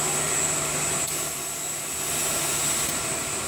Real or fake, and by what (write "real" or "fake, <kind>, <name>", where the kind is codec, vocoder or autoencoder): real